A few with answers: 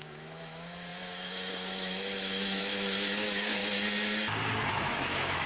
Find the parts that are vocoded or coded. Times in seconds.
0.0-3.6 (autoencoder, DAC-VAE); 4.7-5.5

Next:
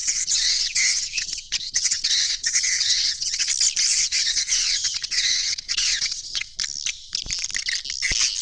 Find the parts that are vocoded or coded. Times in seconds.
0.0-3.5 (vocoder, WaveNeXt); 3.9-6.5

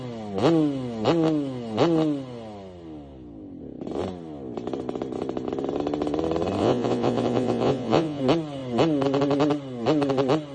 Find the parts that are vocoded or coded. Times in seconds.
6.6-8.2 (vocoder, Vocos)

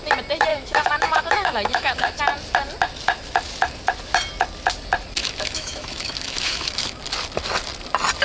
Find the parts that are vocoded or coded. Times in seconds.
0.5-2.2 (autoencoder, DAC-VAE); 5.2-7.0

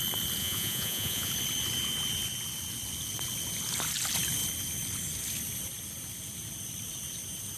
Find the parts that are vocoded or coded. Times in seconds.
0.4-1.3 (vocoder, Vocos)

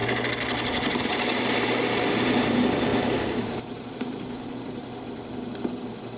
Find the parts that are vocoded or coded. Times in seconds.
2.9-5.0 (vocoder, BigVGAN v2)